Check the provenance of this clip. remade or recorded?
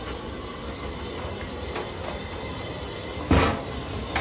recorded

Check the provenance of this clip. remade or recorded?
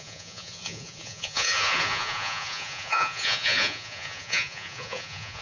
remade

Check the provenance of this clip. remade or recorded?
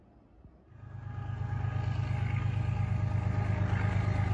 recorded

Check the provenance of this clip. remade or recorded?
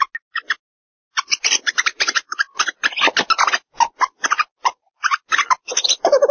recorded